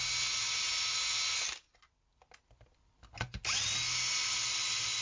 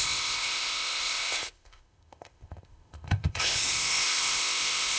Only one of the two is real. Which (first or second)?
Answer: first